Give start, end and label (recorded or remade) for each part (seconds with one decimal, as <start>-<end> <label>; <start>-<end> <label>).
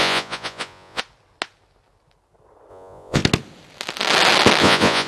0.0-1.0 remade; 1.0-2.7 recorded; 2.7-3.2 remade; 3.2-4.6 recorded; 4.6-5.1 remade